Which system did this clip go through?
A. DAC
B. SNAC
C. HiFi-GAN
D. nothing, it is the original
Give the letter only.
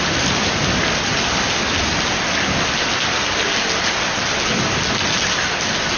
D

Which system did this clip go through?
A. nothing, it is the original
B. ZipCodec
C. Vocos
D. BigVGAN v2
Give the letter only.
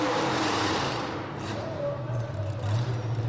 D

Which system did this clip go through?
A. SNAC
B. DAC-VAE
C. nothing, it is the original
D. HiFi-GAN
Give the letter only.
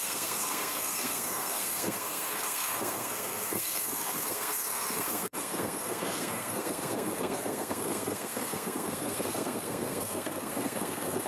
A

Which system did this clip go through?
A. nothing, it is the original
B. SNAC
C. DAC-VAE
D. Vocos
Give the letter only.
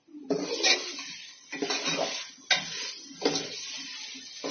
A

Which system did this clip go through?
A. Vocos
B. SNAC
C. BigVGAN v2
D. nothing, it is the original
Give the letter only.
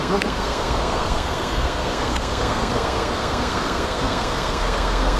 B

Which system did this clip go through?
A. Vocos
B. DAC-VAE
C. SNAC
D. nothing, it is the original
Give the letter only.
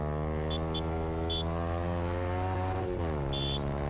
D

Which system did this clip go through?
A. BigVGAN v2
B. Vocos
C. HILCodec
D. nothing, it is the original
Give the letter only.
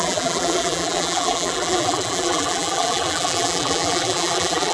A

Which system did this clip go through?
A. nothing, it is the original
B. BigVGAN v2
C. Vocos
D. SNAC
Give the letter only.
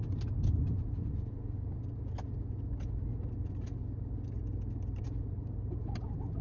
A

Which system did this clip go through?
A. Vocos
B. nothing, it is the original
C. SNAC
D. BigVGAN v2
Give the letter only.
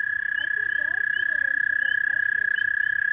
B